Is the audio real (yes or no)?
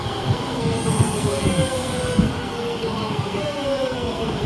no